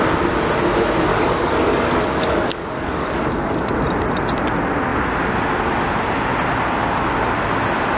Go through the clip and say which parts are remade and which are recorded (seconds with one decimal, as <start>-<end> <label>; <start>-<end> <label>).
0.0-1.1 recorded; 1.1-3.7 remade; 3.7-8.0 recorded